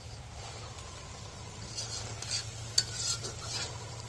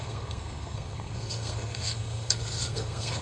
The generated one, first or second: second